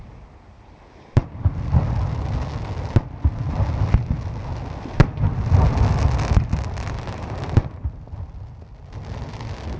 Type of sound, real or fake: real